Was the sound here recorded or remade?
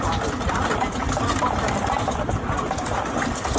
recorded